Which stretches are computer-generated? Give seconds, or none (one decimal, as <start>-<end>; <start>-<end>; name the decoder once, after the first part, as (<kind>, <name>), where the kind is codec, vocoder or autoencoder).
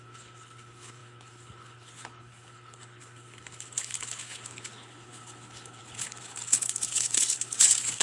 0.0-8.0 (codec, HILCodec)